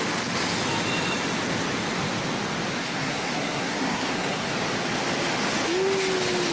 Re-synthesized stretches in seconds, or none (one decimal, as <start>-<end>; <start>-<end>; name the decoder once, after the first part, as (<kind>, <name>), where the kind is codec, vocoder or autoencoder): 2.8-4.5 (codec, SNAC)